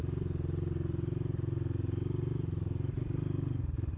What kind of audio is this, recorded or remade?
recorded